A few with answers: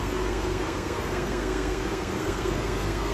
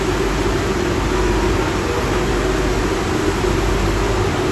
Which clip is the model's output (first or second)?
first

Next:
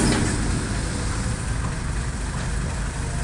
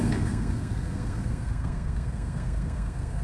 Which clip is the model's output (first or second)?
second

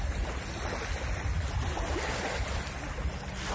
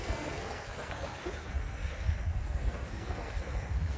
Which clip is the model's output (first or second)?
second